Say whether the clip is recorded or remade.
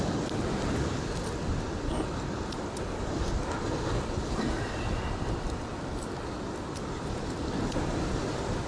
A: recorded